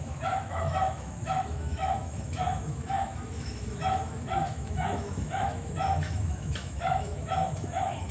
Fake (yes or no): yes